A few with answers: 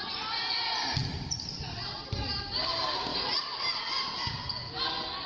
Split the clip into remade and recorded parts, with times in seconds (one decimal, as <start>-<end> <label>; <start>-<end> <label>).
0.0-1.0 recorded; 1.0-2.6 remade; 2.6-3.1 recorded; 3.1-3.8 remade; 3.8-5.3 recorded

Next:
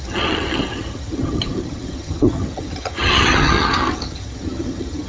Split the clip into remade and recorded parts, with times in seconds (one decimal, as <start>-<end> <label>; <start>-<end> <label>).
0.0-5.1 remade

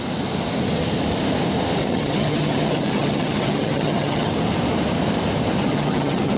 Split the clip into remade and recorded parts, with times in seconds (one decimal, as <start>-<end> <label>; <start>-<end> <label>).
0.0-1.8 recorded; 1.8-4.3 remade; 4.3-5.6 recorded; 5.6-6.4 remade

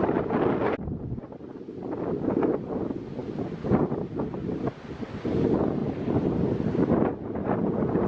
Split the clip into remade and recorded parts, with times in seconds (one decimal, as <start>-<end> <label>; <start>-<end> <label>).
0.0-8.1 recorded